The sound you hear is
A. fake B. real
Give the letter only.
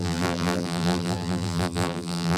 A